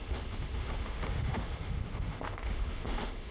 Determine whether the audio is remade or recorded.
remade